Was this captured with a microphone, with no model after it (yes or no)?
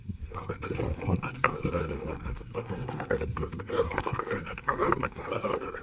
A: no